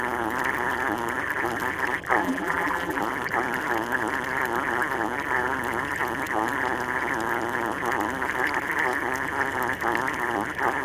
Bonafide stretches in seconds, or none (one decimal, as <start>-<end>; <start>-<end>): 0.0-2.2; 3.0-10.8